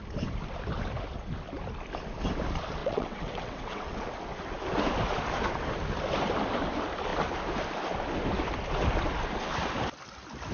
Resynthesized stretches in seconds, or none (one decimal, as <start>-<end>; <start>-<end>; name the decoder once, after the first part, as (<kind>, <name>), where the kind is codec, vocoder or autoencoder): 2.8-4.0 (vocoder, WaveNeXt)